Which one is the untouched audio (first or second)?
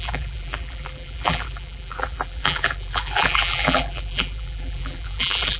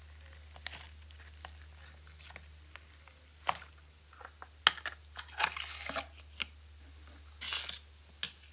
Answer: second